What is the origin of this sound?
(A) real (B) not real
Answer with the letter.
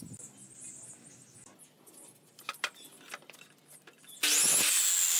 A